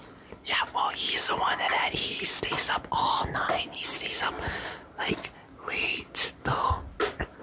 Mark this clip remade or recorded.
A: recorded